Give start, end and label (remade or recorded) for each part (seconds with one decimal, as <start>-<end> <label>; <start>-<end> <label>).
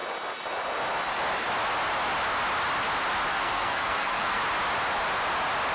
0.0-3.3 recorded; 3.3-4.4 remade; 4.4-5.7 recorded